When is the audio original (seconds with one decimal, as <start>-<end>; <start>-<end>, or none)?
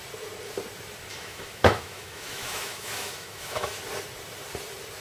0.0-1.1; 3.8-5.0